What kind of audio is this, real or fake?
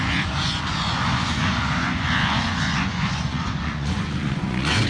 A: fake